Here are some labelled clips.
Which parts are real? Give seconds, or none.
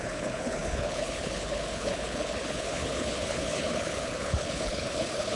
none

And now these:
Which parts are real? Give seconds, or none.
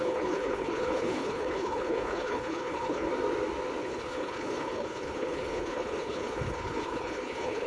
3.1-3.8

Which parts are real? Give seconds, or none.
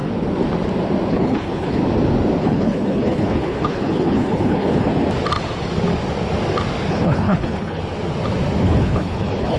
0.0-1.1; 1.8-2.4; 4.9-6.9; 7.8-8.6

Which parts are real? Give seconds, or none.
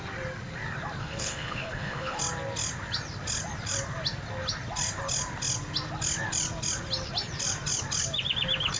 0.0-1.0; 2.2-8.8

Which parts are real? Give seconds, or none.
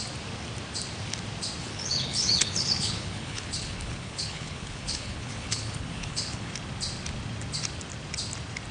0.0-1.6; 6.5-8.7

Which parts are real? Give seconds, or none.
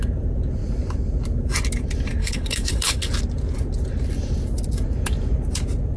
0.0-2.2; 3.1-6.0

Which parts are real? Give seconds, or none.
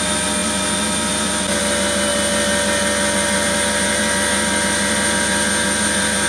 0.0-6.3